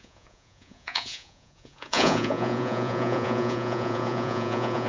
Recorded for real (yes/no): no